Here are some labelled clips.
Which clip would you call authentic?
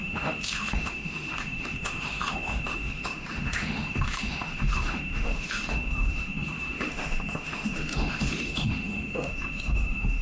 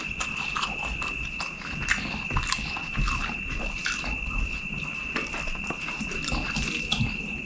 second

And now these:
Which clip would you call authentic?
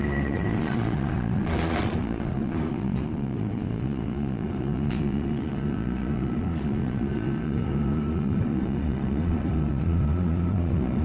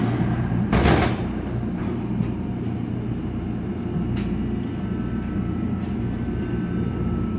second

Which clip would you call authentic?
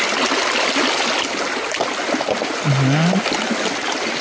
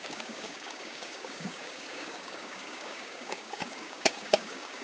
first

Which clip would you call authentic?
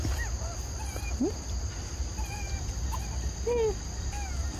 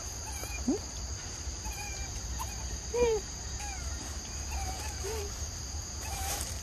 first